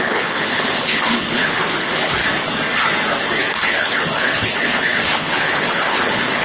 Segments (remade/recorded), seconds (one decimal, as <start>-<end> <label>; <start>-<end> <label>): 0.0-2.2 remade; 2.2-3.5 recorded; 3.5-6.4 remade